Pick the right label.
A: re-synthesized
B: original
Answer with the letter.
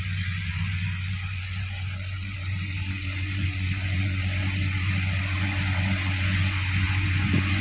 A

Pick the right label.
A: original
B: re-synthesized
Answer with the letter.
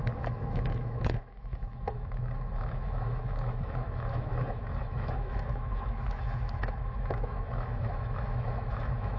B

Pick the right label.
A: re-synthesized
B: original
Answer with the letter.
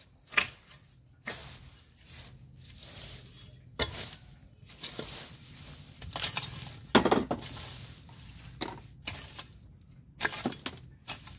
B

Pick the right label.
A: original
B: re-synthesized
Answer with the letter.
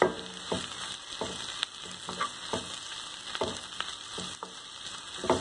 A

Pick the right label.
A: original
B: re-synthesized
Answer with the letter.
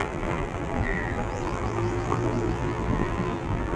B